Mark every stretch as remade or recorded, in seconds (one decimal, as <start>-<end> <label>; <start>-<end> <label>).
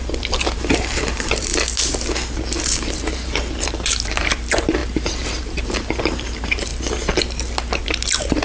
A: 0.0-1.5 remade; 1.5-2.6 recorded; 2.6-6.7 remade; 6.7-7.8 recorded; 7.8-8.4 remade